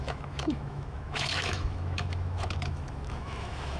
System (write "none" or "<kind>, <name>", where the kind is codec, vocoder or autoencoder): autoencoder, DAC-VAE